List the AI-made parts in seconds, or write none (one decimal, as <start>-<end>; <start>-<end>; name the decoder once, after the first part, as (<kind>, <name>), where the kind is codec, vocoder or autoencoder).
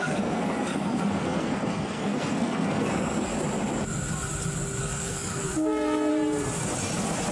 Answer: 0.0-3.3 (codec, SNAC); 4.8-6.1